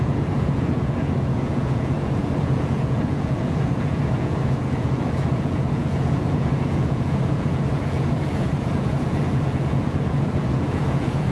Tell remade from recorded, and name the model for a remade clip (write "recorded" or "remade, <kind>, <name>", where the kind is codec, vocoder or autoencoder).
remade, vocoder, Vocos